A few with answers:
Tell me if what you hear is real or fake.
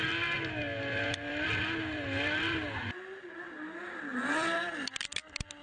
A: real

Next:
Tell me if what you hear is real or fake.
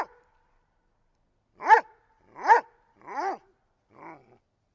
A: real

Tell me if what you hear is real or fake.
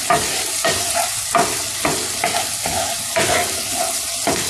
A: real